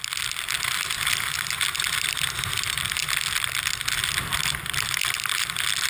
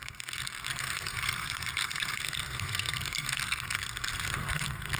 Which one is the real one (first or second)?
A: first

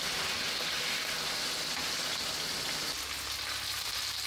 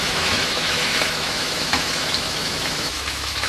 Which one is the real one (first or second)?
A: first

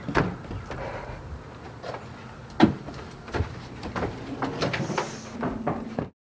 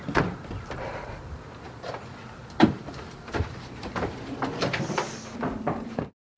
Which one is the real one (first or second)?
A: first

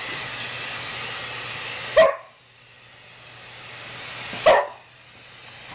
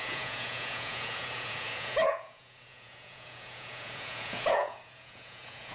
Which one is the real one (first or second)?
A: first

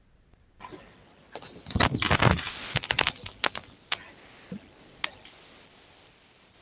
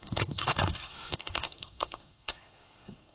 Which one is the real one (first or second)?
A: first